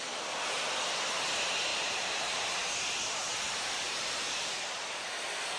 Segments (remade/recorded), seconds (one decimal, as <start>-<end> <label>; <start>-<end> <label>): 0.0-1.7 recorded; 1.7-5.1 remade; 5.1-5.6 recorded